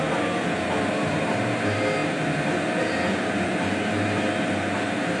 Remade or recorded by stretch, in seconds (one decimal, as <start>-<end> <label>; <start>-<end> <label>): 0.0-5.2 recorded